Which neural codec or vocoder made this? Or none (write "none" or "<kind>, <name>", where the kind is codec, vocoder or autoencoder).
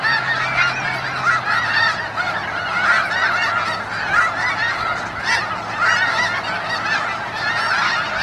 none